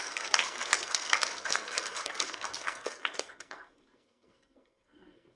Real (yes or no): no